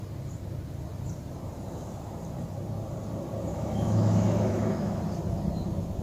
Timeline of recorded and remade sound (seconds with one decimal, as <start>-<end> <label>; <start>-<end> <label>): 0.0-3.5 recorded; 3.5-5.0 remade; 5.0-6.0 recorded